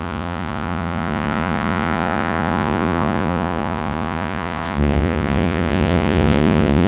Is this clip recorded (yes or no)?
no